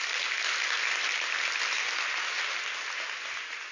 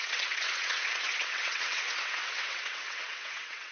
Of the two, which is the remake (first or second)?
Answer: second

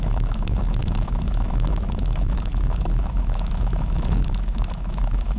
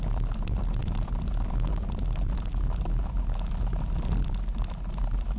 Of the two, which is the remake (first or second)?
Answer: first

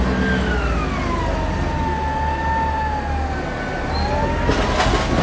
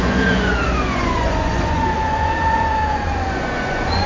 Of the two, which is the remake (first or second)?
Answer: second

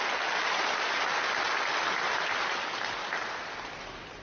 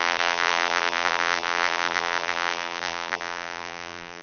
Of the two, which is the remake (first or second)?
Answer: second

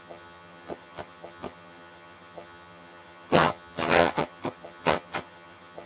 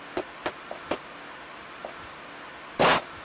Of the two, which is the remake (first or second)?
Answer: first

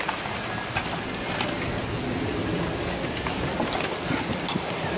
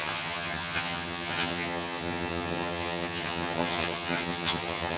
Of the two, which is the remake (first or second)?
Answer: second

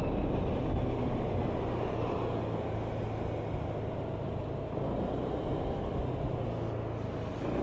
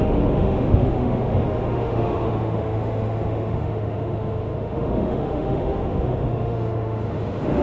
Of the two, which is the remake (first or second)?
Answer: second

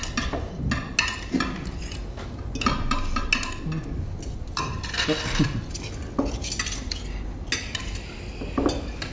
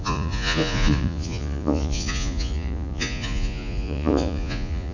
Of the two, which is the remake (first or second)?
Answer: second